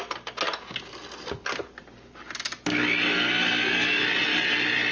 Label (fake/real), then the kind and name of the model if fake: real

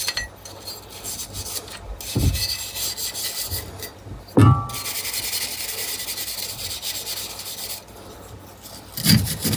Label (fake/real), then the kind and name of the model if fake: real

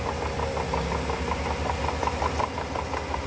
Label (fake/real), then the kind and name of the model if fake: real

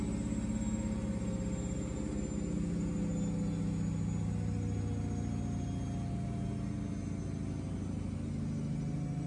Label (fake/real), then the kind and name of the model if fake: real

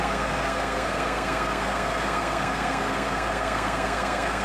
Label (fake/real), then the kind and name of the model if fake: fake, codec, SNAC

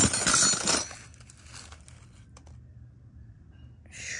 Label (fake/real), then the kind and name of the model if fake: real